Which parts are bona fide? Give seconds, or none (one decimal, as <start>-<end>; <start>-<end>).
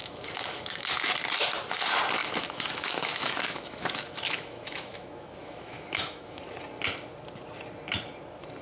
1.1-2.2; 6.4-8.6